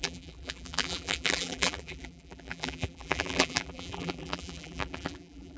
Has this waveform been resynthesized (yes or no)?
yes